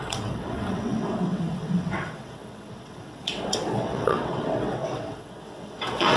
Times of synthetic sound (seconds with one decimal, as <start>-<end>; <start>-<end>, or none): 0.0-6.2